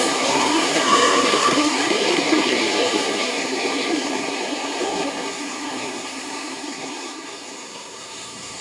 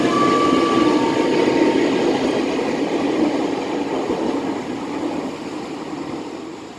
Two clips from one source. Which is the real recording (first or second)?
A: second